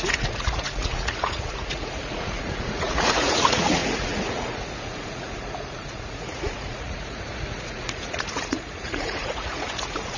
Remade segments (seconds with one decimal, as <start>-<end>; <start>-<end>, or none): 0.0-10.2